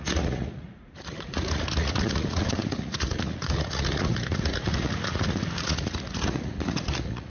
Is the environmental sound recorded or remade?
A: remade